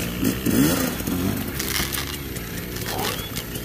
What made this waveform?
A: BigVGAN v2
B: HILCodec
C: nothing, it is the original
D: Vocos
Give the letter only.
C